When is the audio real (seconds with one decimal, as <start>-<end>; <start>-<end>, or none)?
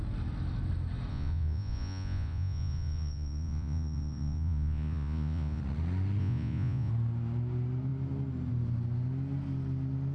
0.0-1.1; 5.6-6.2; 6.9-10.1